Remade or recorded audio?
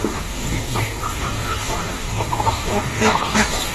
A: remade